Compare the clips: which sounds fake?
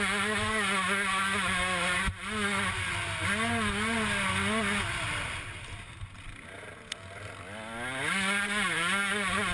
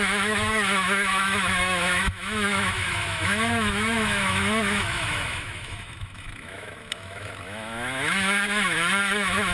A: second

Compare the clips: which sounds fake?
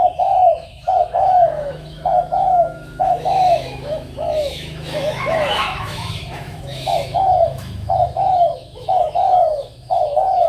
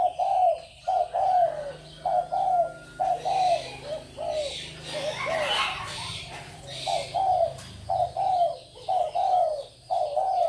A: first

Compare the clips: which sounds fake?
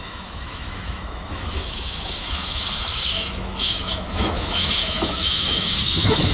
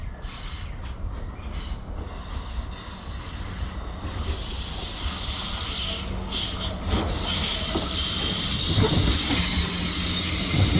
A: first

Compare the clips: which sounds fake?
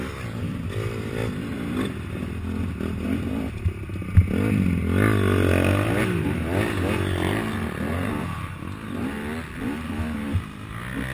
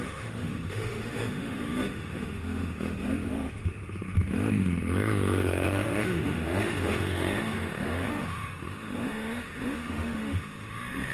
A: second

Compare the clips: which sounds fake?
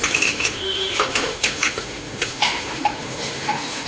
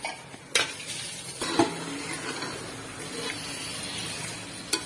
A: first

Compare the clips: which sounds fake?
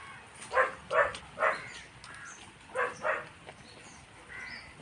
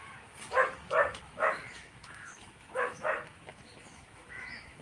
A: second